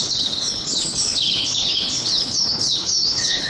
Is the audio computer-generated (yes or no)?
yes